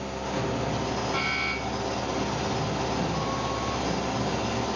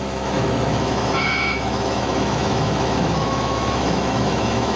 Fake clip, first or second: second